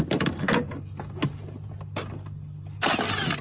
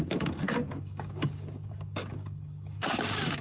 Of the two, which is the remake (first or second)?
second